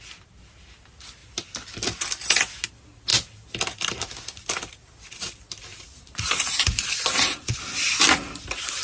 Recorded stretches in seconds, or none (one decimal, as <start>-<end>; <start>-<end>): 0.0-5.7; 7.8-8.8